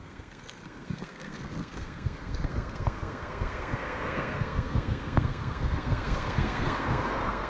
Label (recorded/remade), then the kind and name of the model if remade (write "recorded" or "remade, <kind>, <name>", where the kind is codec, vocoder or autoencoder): remade, codec, SNAC